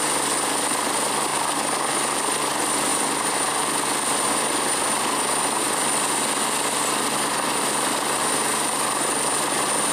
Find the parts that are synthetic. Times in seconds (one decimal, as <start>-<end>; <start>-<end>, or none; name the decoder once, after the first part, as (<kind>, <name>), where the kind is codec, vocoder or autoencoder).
none